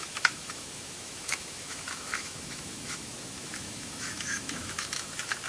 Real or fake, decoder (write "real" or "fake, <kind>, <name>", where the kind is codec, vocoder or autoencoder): fake, autoencoder, DAC-VAE